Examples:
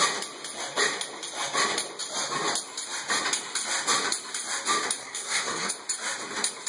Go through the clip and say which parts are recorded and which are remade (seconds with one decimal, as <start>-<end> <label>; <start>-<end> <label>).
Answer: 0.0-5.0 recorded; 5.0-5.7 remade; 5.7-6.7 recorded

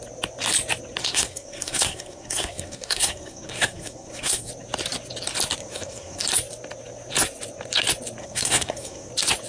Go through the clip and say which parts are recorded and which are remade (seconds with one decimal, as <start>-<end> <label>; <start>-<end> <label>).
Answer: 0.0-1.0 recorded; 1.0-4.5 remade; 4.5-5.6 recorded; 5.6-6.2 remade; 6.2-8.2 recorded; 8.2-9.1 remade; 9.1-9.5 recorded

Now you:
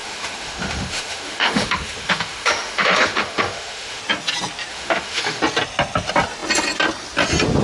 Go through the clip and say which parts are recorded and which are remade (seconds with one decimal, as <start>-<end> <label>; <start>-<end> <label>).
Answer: 0.0-4.0 remade; 4.0-4.7 recorded; 4.7-5.4 remade; 5.4-7.6 recorded

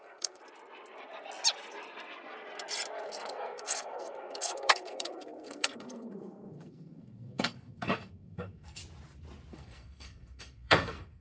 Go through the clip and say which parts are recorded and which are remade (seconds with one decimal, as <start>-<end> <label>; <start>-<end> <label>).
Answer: 0.0-0.4 remade; 0.4-2.9 recorded; 2.9-8.8 remade; 8.8-9.5 recorded; 9.5-11.2 remade

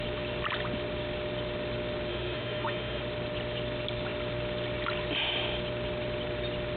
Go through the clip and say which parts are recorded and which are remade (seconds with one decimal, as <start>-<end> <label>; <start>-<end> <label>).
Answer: 0.0-2.1 recorded; 2.1-3.0 remade; 3.0-6.8 recorded

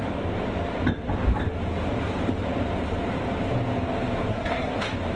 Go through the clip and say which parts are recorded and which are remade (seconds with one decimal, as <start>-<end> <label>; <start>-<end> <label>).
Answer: 0.0-4.3 recorded; 4.3-4.8 remade; 4.8-5.2 recorded

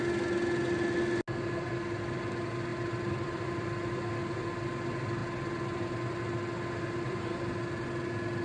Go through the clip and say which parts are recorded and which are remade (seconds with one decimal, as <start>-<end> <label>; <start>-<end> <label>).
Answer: 0.0-2.7 recorded; 2.7-3.9 remade; 3.9-8.4 recorded

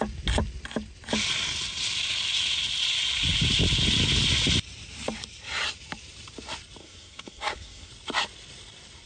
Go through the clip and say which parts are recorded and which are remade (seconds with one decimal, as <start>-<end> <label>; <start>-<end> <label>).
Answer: 0.0-6.8 recorded; 6.8-7.9 remade; 7.9-9.1 recorded